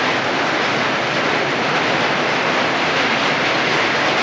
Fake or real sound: real